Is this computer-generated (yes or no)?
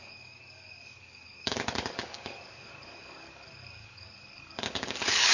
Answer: yes